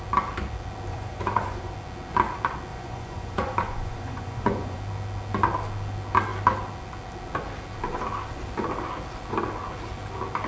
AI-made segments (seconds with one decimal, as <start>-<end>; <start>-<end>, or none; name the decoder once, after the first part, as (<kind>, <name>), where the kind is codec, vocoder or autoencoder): 0.9-1.7 (vocoder, Vocos); 2.7-4.8